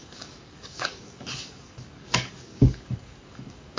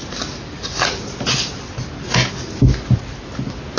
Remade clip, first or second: first